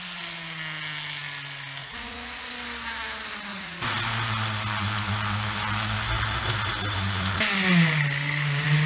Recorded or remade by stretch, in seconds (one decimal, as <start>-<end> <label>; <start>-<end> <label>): 0.0-1.8 recorded; 1.8-2.4 remade; 2.4-3.5 recorded; 3.5-4.0 remade; 4.0-8.9 recorded